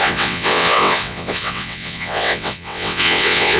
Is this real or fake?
fake